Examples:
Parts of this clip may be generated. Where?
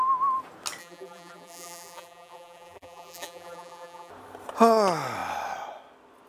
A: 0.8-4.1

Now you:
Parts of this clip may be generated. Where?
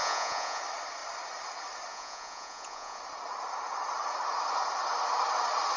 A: 0.0-0.6; 1.9-3.0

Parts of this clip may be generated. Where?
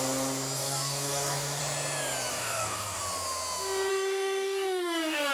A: 0.6-1.6; 2.3-3.0; 3.9-5.3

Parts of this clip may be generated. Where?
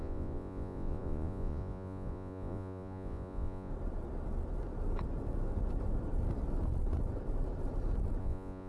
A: 0.0-3.7; 8.2-8.7